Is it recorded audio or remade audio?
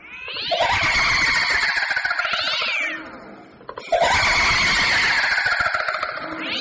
recorded